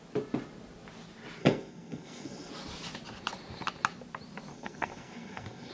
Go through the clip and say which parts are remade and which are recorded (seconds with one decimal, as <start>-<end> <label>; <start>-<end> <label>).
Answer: 0.0-1.4 recorded; 1.4-2.5 remade; 2.5-4.5 recorded; 4.5-5.7 remade